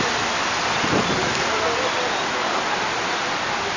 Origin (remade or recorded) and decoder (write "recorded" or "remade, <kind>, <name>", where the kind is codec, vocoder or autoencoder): recorded